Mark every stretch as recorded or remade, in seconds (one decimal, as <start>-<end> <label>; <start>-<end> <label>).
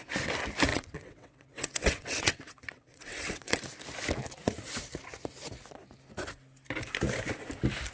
0.0-0.7 recorded; 0.7-3.6 remade; 3.6-7.9 recorded